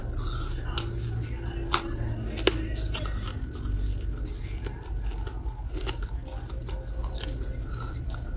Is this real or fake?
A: real